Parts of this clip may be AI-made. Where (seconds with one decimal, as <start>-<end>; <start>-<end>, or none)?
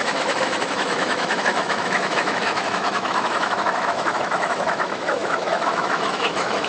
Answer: 0.0-6.7